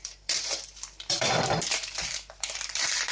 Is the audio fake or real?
fake